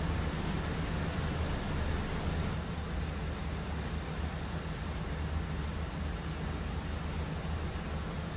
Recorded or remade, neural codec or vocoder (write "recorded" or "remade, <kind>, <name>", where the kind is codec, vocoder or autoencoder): recorded